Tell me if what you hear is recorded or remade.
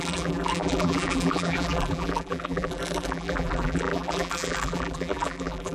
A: remade